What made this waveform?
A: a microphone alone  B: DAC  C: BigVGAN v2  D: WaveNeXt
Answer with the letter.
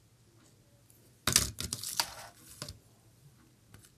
A